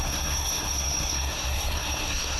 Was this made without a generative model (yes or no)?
no